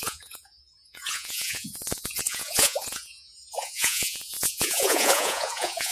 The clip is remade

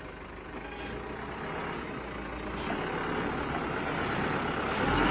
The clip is recorded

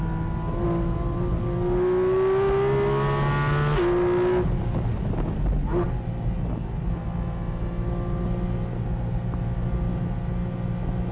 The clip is recorded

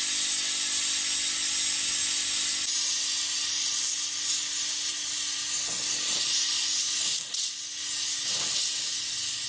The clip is recorded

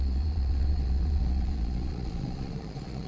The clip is remade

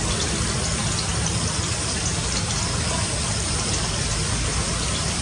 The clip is recorded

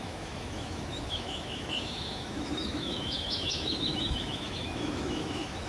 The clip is remade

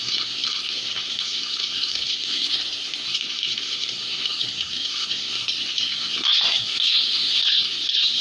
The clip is remade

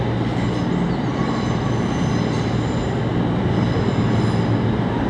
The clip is recorded